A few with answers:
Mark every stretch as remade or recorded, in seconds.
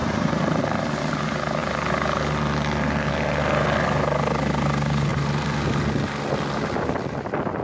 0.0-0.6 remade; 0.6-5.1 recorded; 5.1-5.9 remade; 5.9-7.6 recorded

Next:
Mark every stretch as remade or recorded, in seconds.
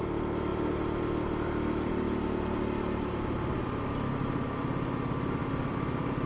0.0-5.4 recorded; 5.4-6.3 remade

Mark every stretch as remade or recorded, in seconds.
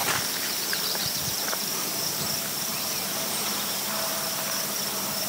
0.0-3.2 remade; 3.2-5.3 recorded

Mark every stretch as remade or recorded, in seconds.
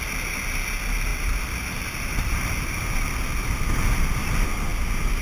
0.0-1.1 recorded; 1.1-4.2 remade; 4.2-5.2 recorded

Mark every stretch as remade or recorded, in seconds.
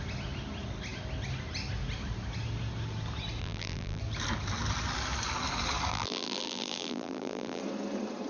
0.0-3.4 recorded; 3.4-4.0 remade; 4.0-5.9 recorded; 5.9-7.6 remade; 7.6-8.3 recorded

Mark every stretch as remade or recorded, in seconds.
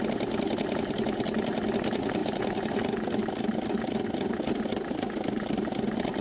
0.0-6.2 recorded